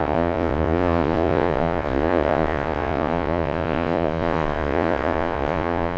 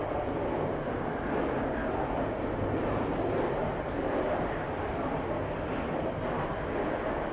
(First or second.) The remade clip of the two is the first